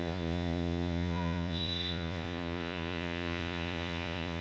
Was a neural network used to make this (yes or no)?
yes